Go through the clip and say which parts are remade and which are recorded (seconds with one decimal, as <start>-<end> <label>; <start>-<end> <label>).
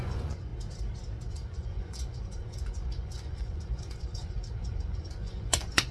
0.0-0.5 remade; 0.5-1.3 recorded; 1.3-5.9 remade